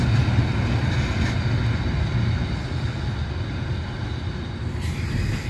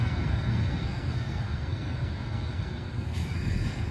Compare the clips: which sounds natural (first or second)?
first